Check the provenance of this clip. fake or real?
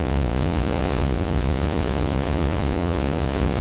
fake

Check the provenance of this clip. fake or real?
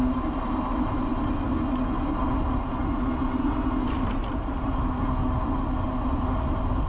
real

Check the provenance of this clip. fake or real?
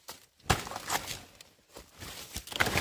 real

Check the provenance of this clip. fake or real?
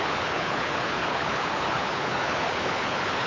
fake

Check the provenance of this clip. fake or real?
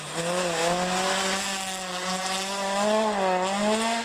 real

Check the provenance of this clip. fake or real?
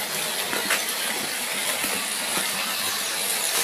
real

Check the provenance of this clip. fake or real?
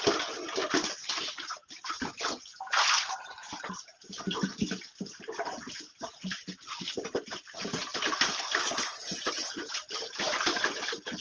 real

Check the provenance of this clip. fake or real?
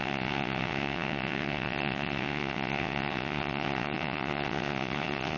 fake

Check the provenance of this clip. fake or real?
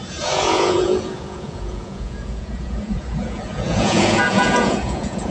fake